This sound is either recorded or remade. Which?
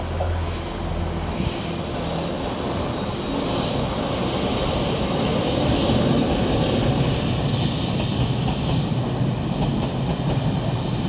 recorded